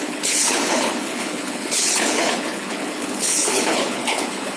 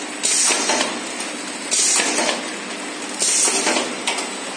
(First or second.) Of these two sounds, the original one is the second